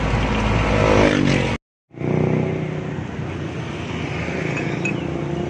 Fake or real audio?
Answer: real